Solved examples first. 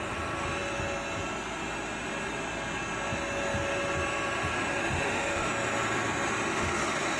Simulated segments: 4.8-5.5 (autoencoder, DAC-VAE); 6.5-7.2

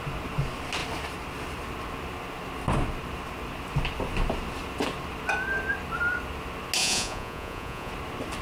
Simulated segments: 6.8-7.9 (vocoder, Vocos)

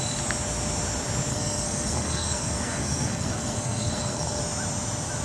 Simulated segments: 1.3-4.4 (codec, SNAC)

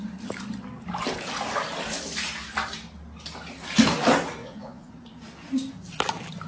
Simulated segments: 4.4-4.9 (vocoder, Vocos)